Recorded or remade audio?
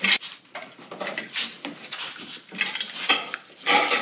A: recorded